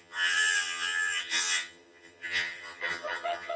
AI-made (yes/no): yes